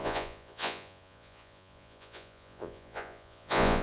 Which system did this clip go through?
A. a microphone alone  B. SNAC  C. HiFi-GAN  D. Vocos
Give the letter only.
D